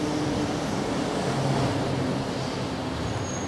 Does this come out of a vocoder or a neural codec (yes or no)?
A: no